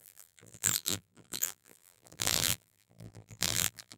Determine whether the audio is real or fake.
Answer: fake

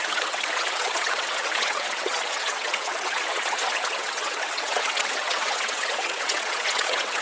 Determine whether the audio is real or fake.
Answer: fake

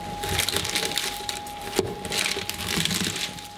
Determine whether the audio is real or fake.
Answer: fake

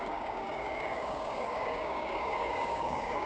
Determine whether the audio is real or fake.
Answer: fake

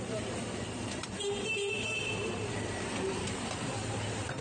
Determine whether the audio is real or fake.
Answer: fake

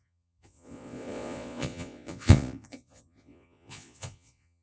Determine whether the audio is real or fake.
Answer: fake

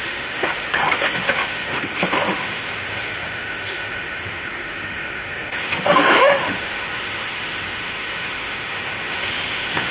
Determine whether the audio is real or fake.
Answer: fake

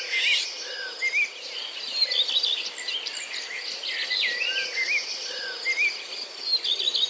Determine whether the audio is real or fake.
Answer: real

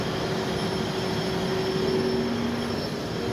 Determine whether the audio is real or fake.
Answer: real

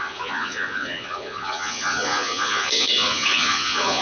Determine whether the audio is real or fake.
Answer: fake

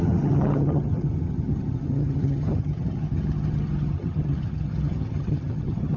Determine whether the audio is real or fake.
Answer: fake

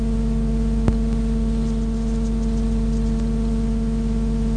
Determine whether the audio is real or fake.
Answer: real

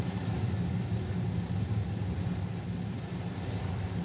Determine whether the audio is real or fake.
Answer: real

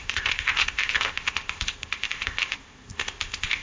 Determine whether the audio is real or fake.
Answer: fake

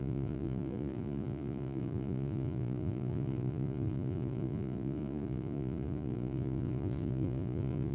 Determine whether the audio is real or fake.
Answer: fake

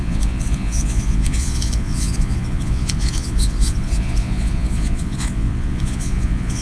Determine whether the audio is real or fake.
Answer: fake